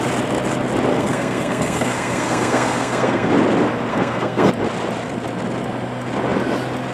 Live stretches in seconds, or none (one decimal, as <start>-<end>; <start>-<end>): 0.0-0.9; 3.3-3.9; 4.5-6.9